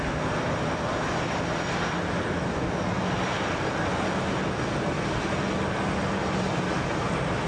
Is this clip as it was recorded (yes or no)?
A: yes